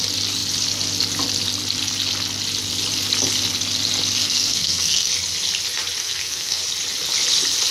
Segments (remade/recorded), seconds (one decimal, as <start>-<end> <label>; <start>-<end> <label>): 0.0-4.2 recorded; 4.2-5.1 remade; 5.1-6.0 recorded; 6.0-6.6 remade; 6.6-7.7 recorded